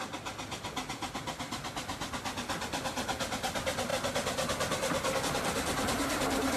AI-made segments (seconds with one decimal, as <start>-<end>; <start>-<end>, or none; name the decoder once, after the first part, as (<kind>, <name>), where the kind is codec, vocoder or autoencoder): 0.0-3.9 (vocoder, BigVGAN v2); 5.2-6.6